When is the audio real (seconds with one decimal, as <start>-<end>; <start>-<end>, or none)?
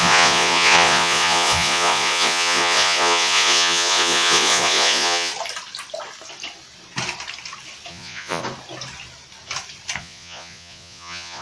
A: 5.3-7.9; 8.4-10.0